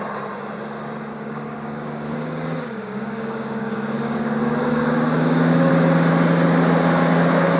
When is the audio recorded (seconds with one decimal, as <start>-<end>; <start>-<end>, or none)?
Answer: 0.0-1.1; 5.7-7.6